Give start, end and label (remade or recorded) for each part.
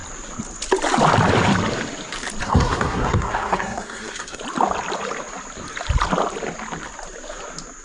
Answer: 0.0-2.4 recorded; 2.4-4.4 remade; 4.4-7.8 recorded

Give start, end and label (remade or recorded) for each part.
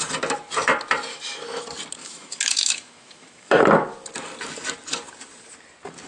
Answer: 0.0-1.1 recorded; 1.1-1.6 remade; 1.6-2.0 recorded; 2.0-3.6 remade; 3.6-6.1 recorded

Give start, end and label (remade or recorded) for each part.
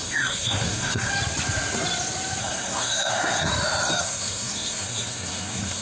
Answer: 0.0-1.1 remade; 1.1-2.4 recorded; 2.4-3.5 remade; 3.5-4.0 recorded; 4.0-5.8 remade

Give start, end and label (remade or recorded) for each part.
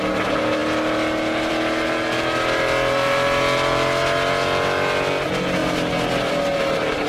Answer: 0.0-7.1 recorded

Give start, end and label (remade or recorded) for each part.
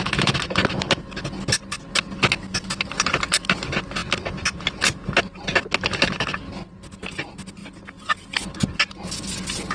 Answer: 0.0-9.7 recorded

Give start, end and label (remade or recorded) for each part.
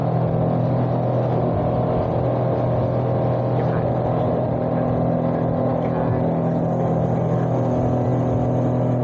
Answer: 0.0-9.0 recorded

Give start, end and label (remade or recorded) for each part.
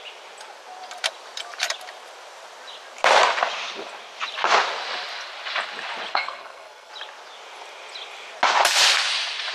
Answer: 0.0-6.1 recorded; 6.1-6.9 remade; 6.9-9.5 recorded